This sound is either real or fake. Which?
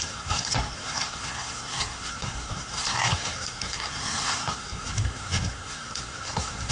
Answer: fake